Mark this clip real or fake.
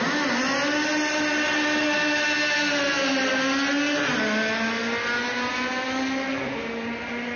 real